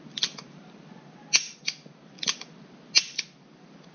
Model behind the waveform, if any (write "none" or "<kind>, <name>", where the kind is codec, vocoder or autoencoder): none